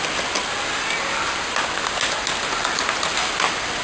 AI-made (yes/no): no